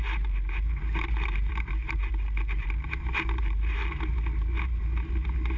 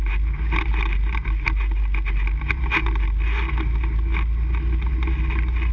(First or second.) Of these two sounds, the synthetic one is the first